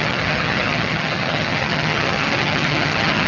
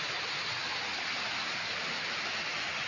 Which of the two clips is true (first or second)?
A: second